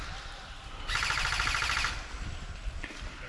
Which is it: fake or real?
real